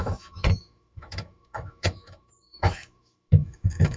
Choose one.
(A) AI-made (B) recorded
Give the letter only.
A